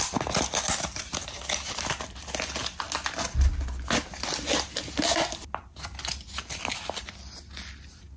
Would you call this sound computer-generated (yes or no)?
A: no